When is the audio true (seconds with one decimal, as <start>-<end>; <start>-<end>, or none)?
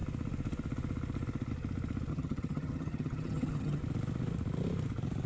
0.0-2.1; 3.8-5.3